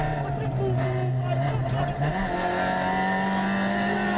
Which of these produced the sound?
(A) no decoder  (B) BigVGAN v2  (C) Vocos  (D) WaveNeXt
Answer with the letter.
A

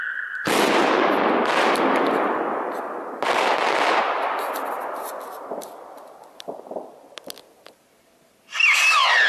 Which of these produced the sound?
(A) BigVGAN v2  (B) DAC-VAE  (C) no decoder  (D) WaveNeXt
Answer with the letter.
C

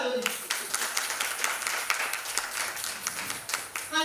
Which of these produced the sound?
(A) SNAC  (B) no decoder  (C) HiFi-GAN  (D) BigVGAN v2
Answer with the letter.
D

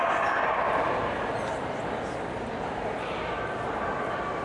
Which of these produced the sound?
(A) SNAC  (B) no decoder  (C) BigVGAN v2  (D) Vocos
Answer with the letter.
B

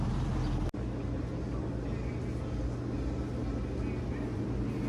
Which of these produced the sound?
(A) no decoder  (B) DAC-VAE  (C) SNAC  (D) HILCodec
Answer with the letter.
A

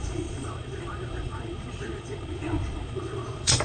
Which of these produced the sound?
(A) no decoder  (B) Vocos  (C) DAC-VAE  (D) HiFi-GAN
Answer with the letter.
B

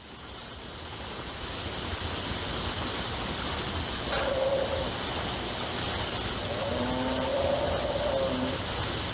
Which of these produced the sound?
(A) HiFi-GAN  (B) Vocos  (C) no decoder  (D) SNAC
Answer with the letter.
C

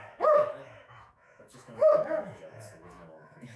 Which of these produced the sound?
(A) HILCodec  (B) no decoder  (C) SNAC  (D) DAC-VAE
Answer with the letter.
D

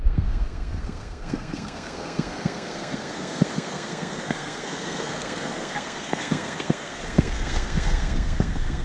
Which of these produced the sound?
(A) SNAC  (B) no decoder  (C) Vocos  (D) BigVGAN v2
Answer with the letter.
A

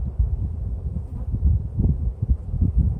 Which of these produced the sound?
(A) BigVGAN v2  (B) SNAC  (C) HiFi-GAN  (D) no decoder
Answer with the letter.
A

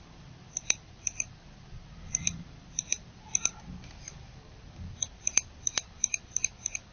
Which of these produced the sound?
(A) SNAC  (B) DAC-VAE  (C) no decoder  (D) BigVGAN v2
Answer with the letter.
D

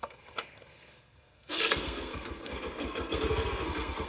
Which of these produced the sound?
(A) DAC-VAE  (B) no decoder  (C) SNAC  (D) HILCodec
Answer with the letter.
C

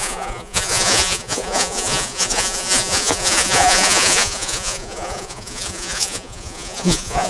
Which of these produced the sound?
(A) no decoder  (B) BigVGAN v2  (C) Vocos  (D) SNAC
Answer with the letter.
C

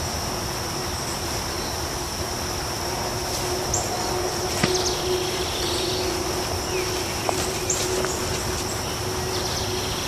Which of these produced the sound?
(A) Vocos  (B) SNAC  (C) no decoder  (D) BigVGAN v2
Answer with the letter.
C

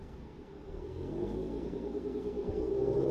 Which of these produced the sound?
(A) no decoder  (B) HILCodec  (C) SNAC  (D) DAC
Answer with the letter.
C